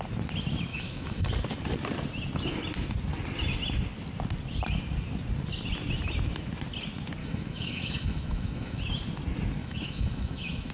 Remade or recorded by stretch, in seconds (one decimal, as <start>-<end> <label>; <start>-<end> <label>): 0.0-0.7 recorded; 0.7-1.3 remade; 1.3-7.2 recorded; 7.2-8.8 remade; 8.8-9.6 recorded; 9.6-10.7 remade